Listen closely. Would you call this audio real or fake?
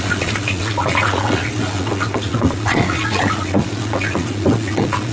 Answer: fake